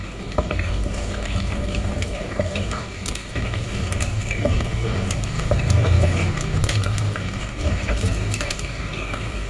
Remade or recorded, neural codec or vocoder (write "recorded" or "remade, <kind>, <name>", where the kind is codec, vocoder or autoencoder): remade, codec, DAC